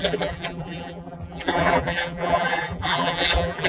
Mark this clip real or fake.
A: fake